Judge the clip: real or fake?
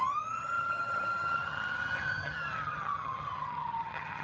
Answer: fake